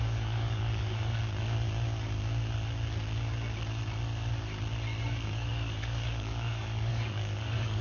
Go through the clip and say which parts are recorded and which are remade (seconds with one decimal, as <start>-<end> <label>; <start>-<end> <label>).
0.0-1.2 remade; 1.2-5.0 recorded; 5.0-7.8 remade